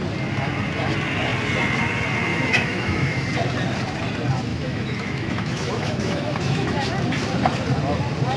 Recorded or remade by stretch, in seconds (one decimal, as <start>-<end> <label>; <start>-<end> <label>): 0.0-2.3 recorded; 2.3-3.3 remade; 3.3-4.5 recorded; 4.5-6.9 remade; 6.9-8.4 recorded